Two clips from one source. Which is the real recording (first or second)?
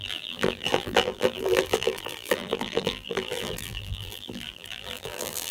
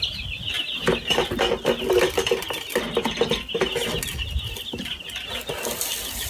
second